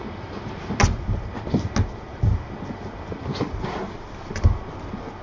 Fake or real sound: real